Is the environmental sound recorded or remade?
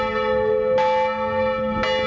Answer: recorded